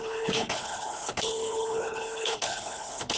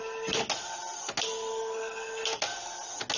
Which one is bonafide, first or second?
second